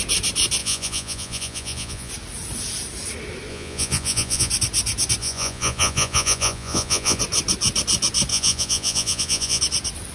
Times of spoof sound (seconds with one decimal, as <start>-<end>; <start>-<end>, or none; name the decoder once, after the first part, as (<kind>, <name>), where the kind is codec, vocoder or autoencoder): 0.6-2.1 (vocoder, Vocos); 3.5-4.5; 5.2-7.2; 8.3-9.6